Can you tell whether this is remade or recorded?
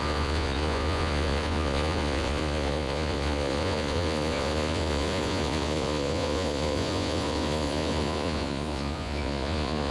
remade